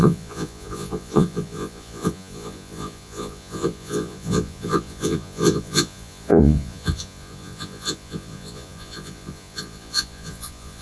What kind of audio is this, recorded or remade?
remade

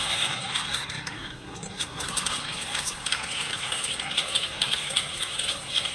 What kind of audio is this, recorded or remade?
remade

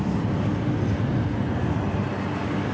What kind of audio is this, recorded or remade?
recorded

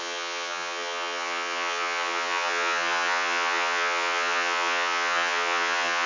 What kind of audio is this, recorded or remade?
remade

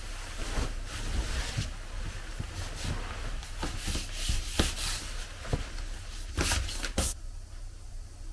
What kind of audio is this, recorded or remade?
recorded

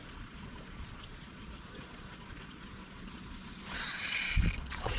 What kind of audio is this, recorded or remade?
remade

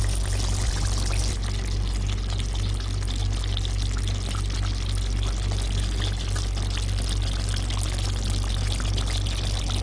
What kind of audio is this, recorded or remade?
recorded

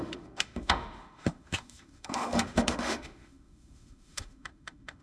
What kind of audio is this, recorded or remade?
remade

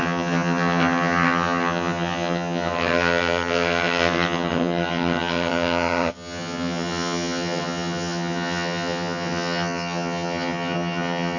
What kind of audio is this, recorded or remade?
remade